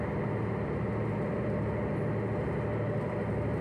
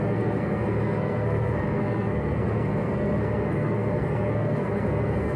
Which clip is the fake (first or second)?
second